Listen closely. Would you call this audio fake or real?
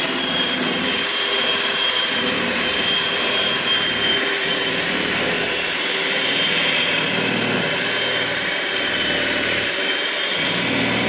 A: fake